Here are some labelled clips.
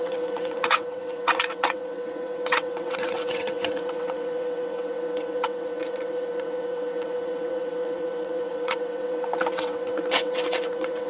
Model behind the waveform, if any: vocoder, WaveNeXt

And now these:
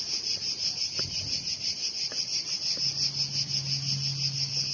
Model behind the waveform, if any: none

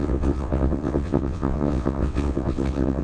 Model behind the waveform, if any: vocoder, WaveNeXt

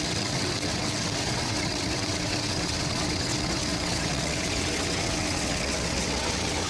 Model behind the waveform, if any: vocoder, WaveNeXt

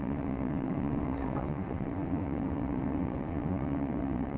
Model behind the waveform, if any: vocoder, WaveNeXt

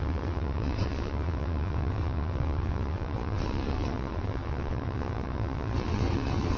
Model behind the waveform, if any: vocoder, WaveNeXt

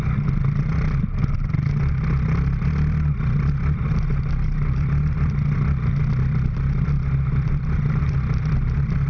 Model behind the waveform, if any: none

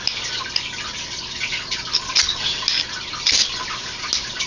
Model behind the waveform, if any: none